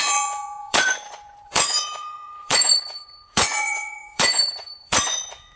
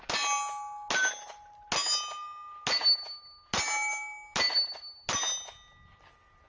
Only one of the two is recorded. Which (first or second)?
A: second